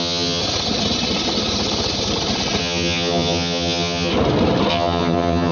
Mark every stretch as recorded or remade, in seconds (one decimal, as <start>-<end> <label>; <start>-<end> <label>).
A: 0.0-0.4 remade; 0.4-2.6 recorded; 2.6-4.1 remade; 4.1-4.7 recorded; 4.7-5.5 remade